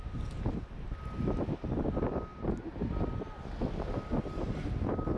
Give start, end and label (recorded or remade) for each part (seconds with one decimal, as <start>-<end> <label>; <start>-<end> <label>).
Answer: 0.0-5.2 recorded